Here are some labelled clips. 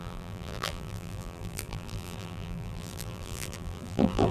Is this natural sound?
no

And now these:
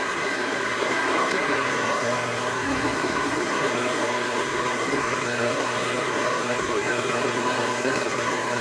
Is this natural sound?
no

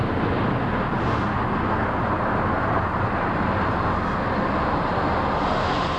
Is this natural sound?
yes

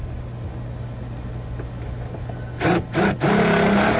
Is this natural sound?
yes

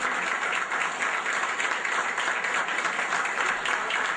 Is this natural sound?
yes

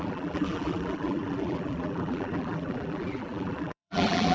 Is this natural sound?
no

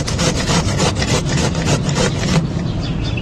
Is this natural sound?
no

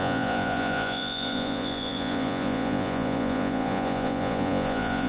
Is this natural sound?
no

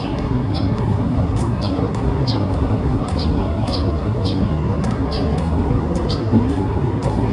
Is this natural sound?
no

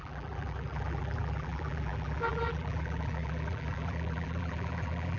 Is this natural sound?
no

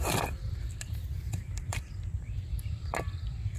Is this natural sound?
no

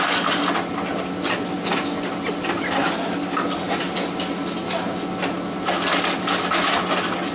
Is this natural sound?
yes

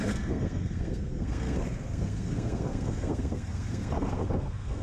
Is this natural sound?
no